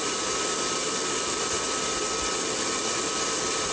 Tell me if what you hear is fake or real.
real